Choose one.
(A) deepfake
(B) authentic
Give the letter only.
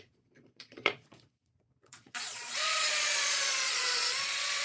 A